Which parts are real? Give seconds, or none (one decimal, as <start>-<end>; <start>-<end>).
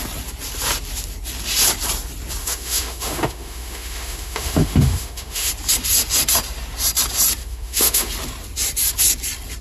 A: 0.0-2.4; 5.5-7.4; 8.1-9.6